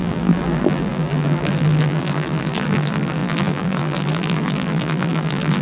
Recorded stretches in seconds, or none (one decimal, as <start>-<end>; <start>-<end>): none